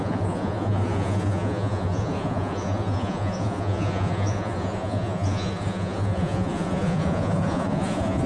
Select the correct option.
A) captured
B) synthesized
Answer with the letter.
B